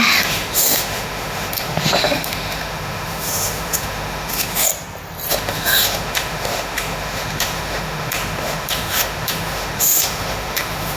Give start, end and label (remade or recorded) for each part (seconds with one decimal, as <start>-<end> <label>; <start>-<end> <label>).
0.0-4.7 remade; 4.7-5.3 recorded; 5.3-11.0 remade

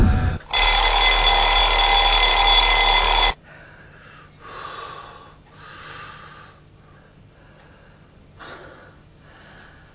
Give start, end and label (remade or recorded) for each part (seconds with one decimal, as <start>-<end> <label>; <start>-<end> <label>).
0.0-9.9 recorded

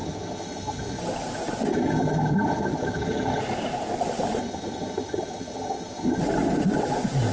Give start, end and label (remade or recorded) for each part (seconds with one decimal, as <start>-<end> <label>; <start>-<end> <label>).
0.0-1.0 remade; 1.0-1.7 recorded; 1.7-3.4 remade; 3.4-4.4 recorded; 4.4-6.2 remade; 6.2-7.3 recorded

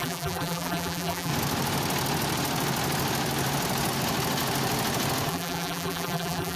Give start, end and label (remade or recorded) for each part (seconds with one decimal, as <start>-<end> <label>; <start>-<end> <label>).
0.0-1.3 remade; 1.3-5.3 recorded; 5.3-6.6 remade

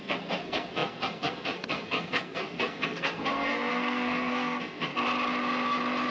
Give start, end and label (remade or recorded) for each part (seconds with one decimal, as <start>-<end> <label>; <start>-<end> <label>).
0.0-4.9 remade; 4.9-6.1 recorded

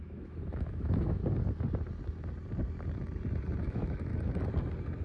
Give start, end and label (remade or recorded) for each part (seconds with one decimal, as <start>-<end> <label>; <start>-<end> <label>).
0.0-1.2 remade; 1.2-3.6 recorded; 3.6-4.1 remade; 4.1-5.0 recorded

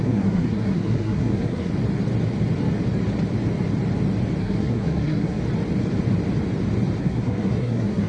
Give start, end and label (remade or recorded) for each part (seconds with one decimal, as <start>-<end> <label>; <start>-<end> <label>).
0.0-1.7 remade; 1.7-4.4 recorded; 4.4-5.4 remade; 5.4-7.0 recorded; 7.0-8.1 remade

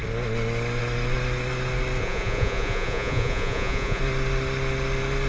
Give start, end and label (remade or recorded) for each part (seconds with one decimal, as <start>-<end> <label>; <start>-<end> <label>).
0.0-2.0 recorded; 2.0-4.0 remade; 4.0-5.3 recorded